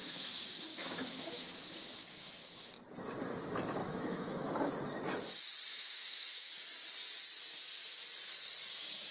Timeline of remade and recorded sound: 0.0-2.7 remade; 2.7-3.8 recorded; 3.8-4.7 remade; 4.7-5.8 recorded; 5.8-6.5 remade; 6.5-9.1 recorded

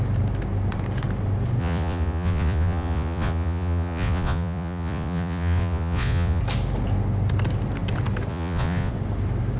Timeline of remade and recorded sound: 0.0-1.6 recorded; 1.6-6.4 remade; 6.4-8.3 recorded; 8.3-8.9 remade; 8.9-9.6 recorded